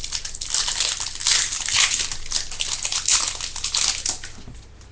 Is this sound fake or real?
real